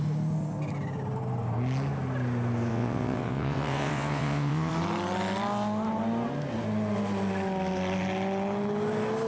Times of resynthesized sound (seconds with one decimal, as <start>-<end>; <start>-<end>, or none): 2.7-4.7

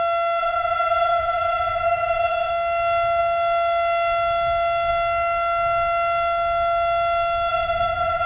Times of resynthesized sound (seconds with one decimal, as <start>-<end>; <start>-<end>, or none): 0.4-2.5; 7.5-8.3

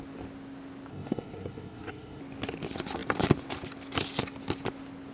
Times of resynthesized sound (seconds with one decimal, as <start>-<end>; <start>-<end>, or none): 0.9-2.2

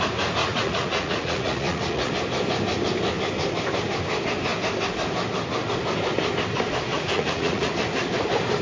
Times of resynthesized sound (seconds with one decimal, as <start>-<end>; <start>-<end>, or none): 0.4-2.1; 6.9-7.7

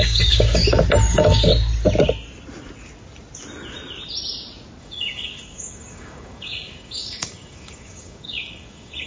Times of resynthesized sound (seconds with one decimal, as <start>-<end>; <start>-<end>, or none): 0.0-0.6; 1.1-1.5; 4.8-9.1

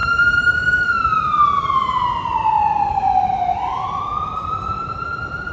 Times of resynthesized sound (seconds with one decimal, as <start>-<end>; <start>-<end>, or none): none

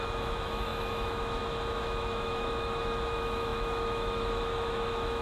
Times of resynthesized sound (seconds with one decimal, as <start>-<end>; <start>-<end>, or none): 0.0-5.2

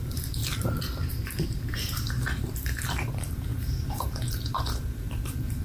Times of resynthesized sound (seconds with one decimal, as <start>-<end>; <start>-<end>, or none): 0.0-0.4; 1.1-5.6